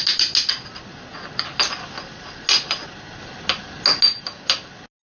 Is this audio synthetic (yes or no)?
no